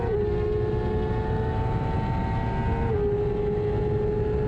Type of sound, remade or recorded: recorded